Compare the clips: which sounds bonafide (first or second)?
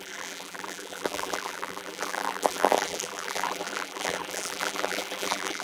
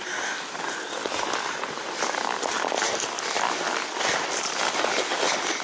second